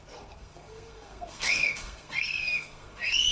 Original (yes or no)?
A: no